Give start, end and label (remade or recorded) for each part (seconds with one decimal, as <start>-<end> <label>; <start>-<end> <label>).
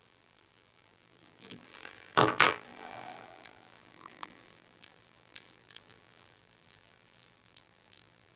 0.0-8.4 remade